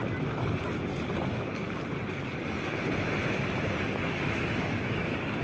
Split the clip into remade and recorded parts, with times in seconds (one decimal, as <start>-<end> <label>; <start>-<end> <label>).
0.0-0.9 recorded; 0.9-1.8 remade; 1.8-4.0 recorded; 4.0-5.4 remade